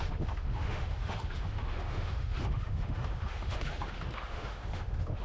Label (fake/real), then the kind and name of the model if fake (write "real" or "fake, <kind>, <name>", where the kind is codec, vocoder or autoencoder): fake, autoencoder, DAC-VAE